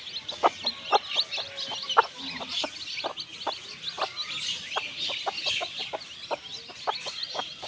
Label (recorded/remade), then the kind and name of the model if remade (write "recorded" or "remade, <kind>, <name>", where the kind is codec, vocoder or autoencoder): recorded